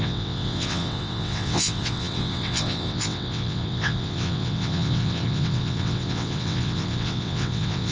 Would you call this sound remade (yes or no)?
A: yes